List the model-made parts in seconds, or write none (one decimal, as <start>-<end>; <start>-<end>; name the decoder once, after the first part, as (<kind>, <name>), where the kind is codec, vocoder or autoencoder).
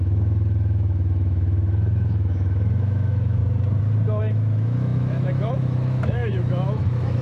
0.0-3.4 (autoencoder, DAC-VAE); 4.2-7.2